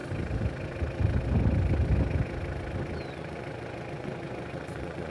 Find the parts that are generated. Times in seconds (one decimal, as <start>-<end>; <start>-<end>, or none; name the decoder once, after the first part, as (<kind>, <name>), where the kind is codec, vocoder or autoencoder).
3.1-5.1 (vocoder, Vocos)